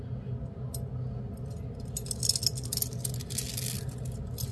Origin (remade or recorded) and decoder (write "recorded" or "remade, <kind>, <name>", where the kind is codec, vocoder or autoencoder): recorded